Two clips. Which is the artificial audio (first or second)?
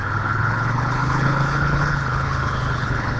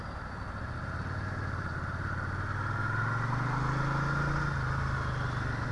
first